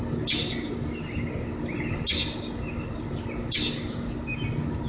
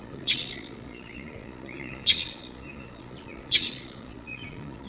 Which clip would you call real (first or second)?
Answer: first